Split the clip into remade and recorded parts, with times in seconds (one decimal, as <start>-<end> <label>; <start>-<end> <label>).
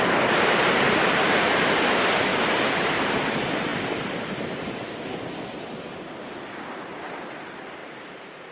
0.0-8.5 remade